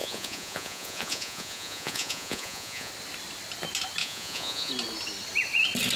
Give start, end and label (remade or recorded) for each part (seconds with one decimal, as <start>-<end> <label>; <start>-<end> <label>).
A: 0.0-2.9 remade; 2.9-4.0 recorded; 4.0-4.7 remade; 4.7-6.0 recorded